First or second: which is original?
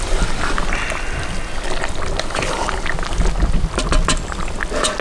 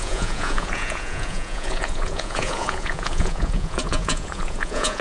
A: first